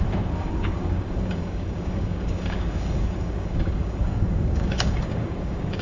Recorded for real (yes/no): no